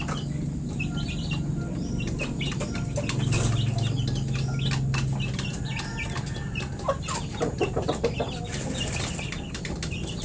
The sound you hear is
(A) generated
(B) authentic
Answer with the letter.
B